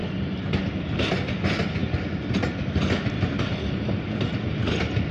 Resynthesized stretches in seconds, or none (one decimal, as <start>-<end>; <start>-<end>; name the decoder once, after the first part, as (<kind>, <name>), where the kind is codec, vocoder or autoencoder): none